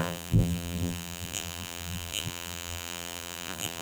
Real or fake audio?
fake